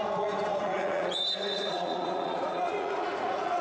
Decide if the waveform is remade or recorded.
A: remade